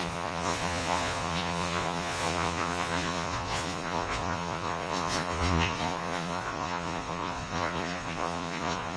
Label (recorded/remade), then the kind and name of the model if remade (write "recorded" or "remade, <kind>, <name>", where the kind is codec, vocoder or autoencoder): remade, vocoder, Vocos